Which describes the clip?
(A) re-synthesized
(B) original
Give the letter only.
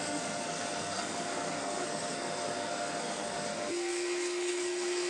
A